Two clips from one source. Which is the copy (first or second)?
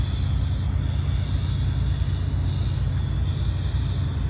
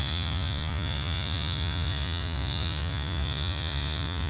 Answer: second